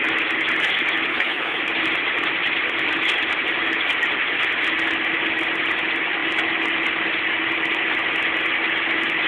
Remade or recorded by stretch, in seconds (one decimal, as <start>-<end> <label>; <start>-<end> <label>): 0.0-1.1 recorded; 1.1-1.6 remade; 1.6-9.3 recorded